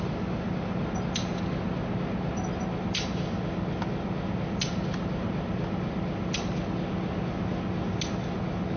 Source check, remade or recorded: recorded